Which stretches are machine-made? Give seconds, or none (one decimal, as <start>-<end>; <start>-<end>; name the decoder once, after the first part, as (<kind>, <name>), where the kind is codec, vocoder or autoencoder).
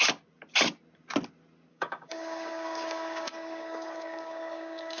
1.7-5.0 (codec, DAC)